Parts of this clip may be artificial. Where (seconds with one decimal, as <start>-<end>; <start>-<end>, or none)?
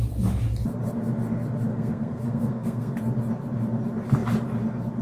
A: 1.7-2.9